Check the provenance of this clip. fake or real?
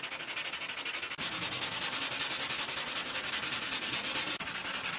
real